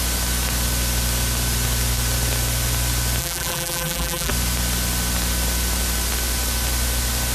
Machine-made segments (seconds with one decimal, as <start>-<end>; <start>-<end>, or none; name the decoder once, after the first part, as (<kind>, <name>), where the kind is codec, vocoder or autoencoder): 3.2-4.3 (vocoder, BigVGAN v2)